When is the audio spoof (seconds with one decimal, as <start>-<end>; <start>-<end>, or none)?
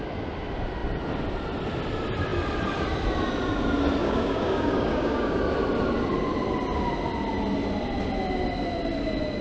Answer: 4.0-5.4